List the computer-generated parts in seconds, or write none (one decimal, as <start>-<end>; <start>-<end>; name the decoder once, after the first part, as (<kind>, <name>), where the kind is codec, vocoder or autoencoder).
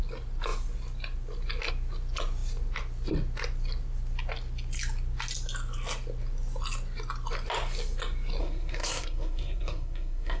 8.4-10.4 (codec, SNAC)